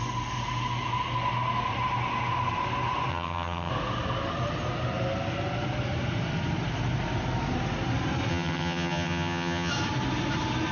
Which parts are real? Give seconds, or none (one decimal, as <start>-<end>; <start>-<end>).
0.0-3.1; 3.7-8.3; 9.7-10.7